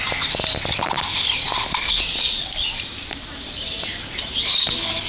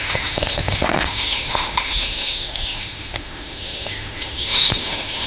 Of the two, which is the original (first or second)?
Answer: first